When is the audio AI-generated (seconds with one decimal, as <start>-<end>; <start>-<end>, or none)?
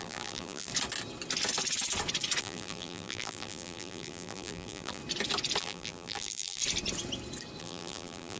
0.0-0.7; 2.4-5.0; 5.6-6.6; 7.6-8.4